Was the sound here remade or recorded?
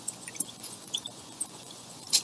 remade